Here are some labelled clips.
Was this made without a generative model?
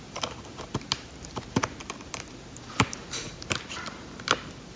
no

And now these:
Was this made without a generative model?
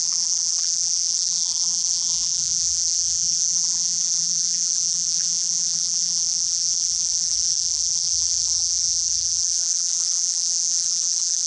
no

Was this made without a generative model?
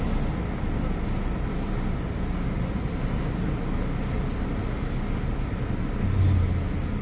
yes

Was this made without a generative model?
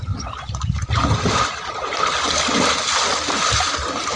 yes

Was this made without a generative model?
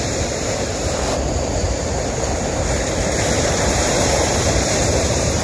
no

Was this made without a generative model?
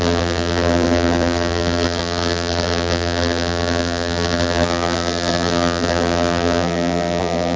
no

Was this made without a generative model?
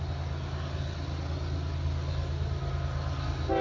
yes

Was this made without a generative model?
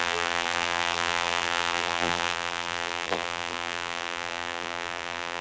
no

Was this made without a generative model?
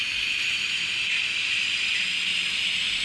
yes